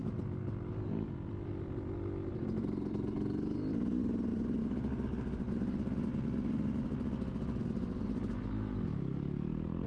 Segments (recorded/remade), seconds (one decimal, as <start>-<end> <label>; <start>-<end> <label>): 0.0-9.9 recorded